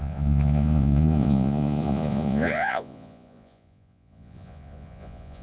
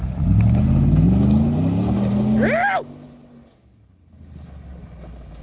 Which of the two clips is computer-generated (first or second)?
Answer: first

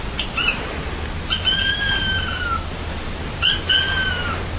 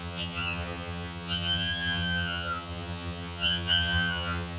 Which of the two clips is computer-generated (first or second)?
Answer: second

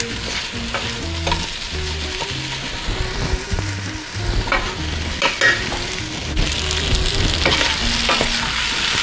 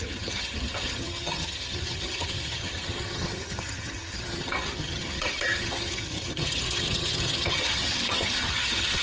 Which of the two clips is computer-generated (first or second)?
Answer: second